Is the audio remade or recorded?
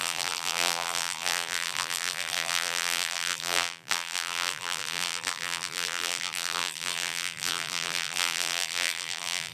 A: remade